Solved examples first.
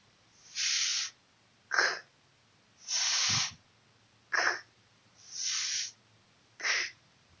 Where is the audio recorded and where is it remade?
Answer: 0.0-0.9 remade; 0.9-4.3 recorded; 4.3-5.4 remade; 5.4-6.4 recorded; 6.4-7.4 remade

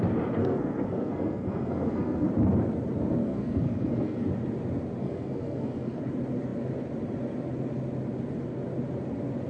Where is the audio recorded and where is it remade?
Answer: 0.0-0.4 recorded; 0.4-2.3 remade; 2.3-3.2 recorded; 3.2-4.3 remade; 4.3-5.0 recorded; 5.0-6.0 remade; 6.0-9.5 recorded

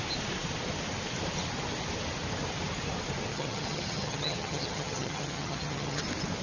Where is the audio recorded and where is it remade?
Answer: 0.0-3.3 recorded; 3.3-6.0 remade; 6.0-6.4 recorded

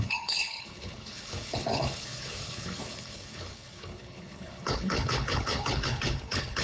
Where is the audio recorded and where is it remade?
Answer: 0.0-6.6 remade